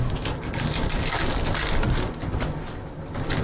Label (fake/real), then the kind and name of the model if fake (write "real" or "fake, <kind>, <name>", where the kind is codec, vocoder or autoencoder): real